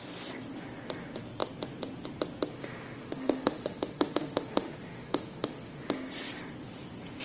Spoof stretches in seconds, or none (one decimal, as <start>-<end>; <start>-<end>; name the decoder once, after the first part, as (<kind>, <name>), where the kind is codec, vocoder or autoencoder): 2.5-6.1 (autoencoder, DAC-VAE)